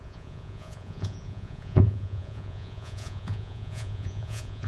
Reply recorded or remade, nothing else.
remade